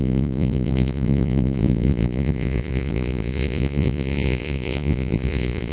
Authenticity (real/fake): fake